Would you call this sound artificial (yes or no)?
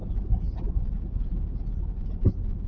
no